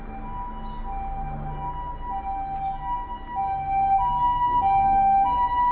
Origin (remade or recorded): recorded